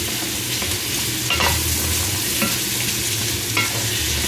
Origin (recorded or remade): recorded